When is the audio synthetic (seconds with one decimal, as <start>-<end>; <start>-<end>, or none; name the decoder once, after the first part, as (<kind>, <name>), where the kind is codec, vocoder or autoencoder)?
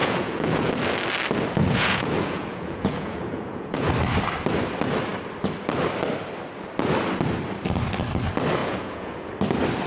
0.0-0.7 (vocoder, Vocos); 1.6-3.9; 8.6-9.3